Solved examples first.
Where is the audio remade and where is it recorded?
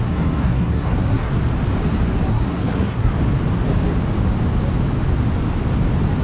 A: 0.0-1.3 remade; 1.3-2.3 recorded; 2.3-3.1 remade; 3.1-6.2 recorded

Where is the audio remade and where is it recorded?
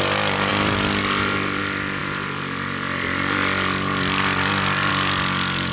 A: 0.0-0.5 recorded; 0.5-1.6 remade; 1.6-2.0 recorded; 2.0-4.9 remade; 4.9-5.7 recorded